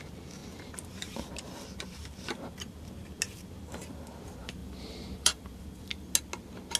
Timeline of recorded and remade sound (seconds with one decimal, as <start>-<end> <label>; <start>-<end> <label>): 0.0-4.6 recorded; 4.6-5.6 remade; 5.6-6.8 recorded